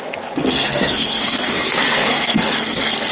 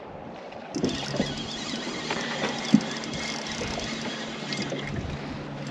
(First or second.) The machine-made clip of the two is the first